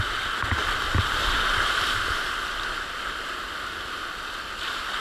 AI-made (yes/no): no